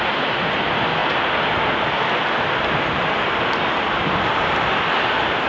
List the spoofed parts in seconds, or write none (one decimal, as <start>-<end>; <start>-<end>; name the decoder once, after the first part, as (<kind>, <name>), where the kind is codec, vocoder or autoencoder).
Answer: none